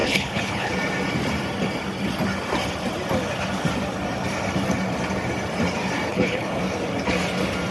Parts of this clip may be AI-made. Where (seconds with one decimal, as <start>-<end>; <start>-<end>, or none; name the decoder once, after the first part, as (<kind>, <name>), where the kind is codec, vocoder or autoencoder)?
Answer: 0.0-0.7 (codec, HILCodec); 6.1-6.6